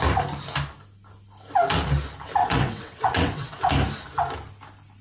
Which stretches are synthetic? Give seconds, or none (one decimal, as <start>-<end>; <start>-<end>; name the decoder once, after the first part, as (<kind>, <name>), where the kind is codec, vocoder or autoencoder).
2.4-3.7 (vocoder, WaveNeXt)